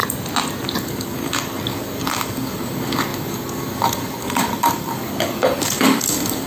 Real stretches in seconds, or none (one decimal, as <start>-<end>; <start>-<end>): 0.0-0.8